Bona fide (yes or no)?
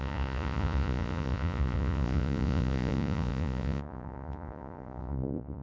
no